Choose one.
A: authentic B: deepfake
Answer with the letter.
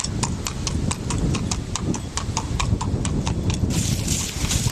A